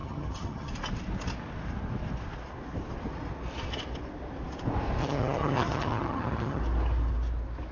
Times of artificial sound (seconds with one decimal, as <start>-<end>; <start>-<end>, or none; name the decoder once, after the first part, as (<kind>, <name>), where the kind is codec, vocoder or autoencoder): 0.0-0.7 (vocoder, HiFi-GAN); 5.0-6.6